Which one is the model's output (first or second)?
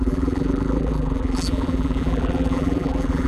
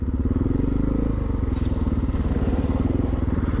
first